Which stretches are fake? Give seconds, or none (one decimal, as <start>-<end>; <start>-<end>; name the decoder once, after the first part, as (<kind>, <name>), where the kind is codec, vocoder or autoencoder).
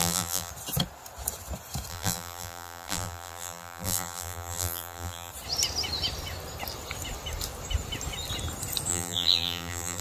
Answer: 0.0-0.5 (vocoder, BigVGAN v2); 1.9-5.3; 8.9-10.0